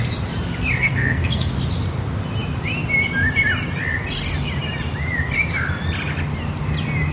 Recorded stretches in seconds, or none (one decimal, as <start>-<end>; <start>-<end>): 0.0-0.8; 1.5-7.1